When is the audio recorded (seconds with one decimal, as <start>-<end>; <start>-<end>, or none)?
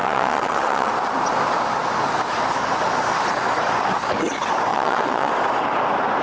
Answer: 0.9-4.7; 5.3-6.2